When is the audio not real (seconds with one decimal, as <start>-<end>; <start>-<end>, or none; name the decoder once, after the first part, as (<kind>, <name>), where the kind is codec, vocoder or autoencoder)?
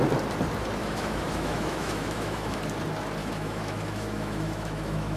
0.8-2.6 (autoencoder, DAC-VAE); 3.2-5.2